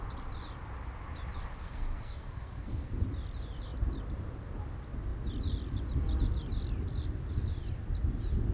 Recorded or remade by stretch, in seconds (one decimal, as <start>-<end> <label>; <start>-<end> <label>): 0.0-1.6 recorded; 1.6-2.9 remade; 2.9-8.5 recorded